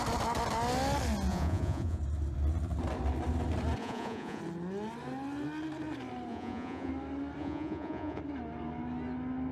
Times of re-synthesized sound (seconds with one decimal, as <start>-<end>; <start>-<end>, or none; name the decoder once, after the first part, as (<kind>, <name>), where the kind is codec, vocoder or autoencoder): 1.3-2.0 (vocoder, Vocos); 3.8-4.4; 6.3-6.9; 7.4-8.2